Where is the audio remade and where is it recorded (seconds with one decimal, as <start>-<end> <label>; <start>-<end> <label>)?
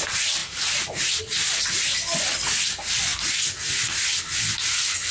0.0-0.4 recorded; 0.4-1.2 remade; 1.2-3.1 recorded; 3.1-3.9 remade; 3.9-5.1 recorded